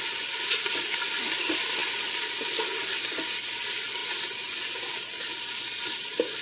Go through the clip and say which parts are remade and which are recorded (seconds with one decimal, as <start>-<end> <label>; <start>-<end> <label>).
0.0-6.4 recorded